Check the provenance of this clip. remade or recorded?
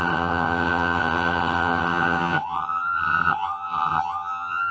remade